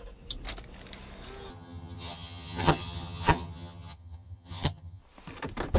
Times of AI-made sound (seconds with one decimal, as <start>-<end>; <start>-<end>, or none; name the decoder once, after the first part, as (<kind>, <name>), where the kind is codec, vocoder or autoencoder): 1.5-5.0 (vocoder, HiFi-GAN)